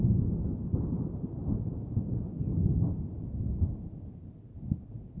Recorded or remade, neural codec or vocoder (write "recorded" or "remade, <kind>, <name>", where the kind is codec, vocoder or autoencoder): recorded